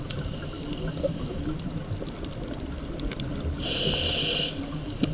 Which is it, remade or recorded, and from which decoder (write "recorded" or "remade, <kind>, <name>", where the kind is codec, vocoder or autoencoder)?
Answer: recorded